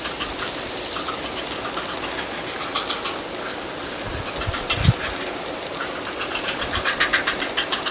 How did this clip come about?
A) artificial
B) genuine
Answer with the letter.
B